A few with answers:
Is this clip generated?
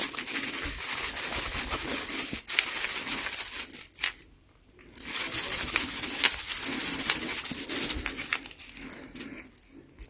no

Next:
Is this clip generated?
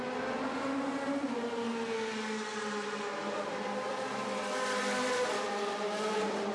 no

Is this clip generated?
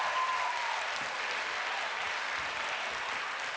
no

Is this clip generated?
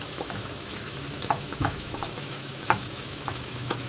yes